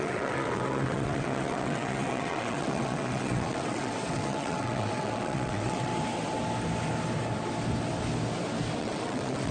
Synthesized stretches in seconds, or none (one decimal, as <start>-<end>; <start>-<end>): 0.0-5.9; 8.8-9.5